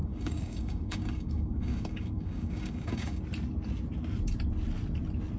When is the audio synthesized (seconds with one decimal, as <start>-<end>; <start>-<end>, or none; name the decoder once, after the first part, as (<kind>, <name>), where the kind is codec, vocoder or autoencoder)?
0.0-3.2 (codec, DAC)